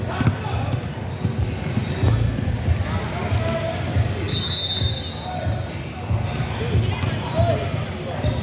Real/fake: real